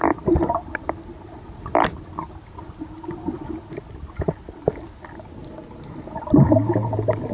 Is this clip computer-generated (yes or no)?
no